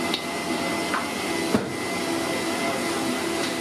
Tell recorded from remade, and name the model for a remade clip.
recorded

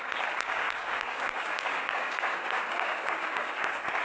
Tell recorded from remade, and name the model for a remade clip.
remade, codec, DAC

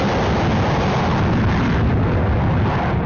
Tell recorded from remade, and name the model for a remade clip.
recorded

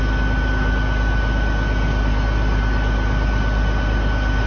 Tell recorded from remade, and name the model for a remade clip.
recorded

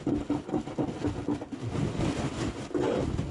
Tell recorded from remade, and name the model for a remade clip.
recorded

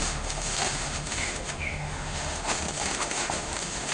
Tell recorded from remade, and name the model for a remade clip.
remade, autoencoder, DAC-VAE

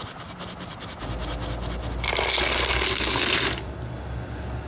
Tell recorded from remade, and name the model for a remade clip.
recorded